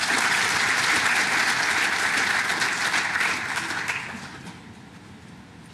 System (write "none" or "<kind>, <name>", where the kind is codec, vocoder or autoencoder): none